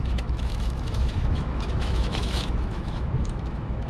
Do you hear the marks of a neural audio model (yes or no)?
yes